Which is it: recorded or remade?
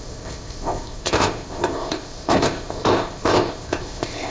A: remade